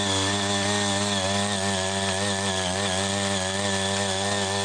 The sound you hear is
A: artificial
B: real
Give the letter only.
B